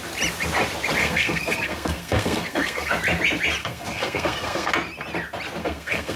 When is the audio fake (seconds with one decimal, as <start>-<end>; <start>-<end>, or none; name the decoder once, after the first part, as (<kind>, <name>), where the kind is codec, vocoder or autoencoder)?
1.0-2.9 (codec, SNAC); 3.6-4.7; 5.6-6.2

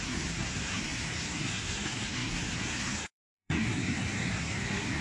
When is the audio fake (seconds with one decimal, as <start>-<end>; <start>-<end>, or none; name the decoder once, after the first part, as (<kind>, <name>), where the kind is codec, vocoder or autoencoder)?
0.0-5.0 (codec, SNAC)

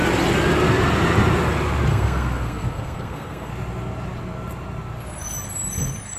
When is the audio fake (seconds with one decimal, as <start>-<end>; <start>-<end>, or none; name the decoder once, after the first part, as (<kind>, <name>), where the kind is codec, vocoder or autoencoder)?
1.9-3.5 (codec, SNAC)

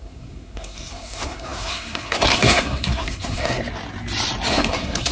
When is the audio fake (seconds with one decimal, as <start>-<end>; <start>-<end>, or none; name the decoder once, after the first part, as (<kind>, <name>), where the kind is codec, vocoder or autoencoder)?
0.0-3.6 (codec, SNAC); 4.5-5.1

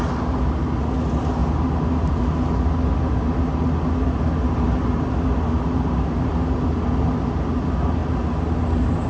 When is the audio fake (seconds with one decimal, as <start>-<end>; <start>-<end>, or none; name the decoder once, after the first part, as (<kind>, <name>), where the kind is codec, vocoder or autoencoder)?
none